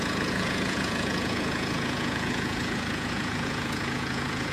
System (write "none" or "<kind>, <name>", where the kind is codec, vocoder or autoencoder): vocoder, Vocos